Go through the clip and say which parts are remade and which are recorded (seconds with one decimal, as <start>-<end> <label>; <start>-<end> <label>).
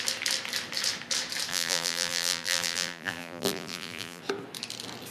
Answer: 0.0-1.5 recorded; 1.5-4.2 remade; 4.2-5.1 recorded